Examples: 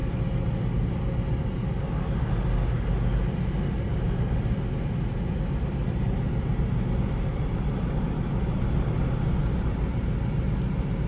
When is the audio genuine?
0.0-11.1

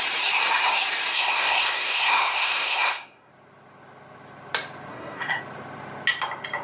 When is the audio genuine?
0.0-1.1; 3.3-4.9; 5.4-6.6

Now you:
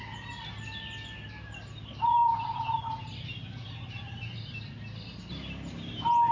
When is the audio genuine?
0.0-6.3

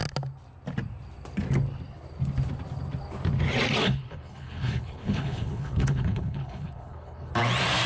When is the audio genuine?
0.0-3.8; 7.3-7.9

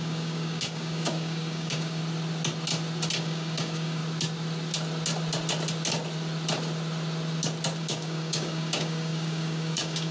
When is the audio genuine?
2.0-3.2; 4.0-7.8

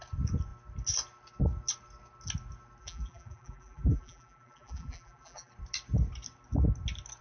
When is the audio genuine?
0.0-2.8; 5.5-7.2

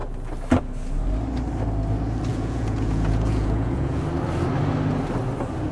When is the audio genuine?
0.0-2.3; 4.0-5.7